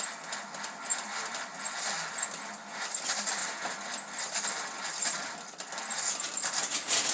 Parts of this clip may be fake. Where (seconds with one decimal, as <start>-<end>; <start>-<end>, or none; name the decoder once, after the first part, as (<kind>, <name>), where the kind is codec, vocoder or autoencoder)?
none